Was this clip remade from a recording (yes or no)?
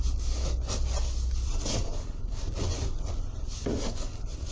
no